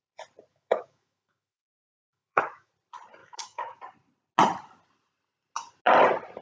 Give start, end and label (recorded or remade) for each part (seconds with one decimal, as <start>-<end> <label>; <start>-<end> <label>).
0.0-0.5 recorded; 0.5-2.7 remade; 2.7-3.2 recorded; 3.2-3.8 remade; 3.8-6.4 recorded